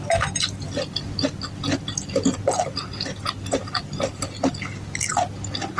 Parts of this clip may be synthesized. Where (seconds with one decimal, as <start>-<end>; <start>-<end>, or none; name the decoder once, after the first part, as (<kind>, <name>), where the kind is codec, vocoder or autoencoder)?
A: none

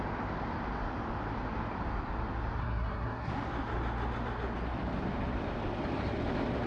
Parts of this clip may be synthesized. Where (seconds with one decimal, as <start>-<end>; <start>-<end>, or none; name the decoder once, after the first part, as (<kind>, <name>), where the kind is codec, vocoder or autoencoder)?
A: 2.6-3.3 (codec, SNAC)

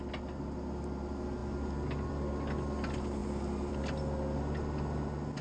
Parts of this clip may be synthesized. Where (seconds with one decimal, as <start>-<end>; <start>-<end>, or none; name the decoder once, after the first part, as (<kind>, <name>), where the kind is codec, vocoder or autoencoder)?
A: none

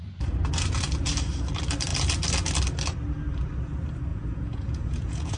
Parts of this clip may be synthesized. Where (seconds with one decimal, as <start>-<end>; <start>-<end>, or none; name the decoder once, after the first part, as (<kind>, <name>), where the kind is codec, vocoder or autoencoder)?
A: 4.1-5.4 (vocoder, Vocos)